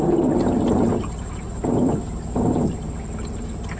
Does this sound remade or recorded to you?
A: remade